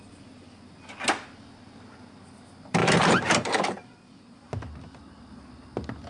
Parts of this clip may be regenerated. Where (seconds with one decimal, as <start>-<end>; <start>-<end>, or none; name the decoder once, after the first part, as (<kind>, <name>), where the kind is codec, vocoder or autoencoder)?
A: 2.8-4.5 (vocoder, BigVGAN v2)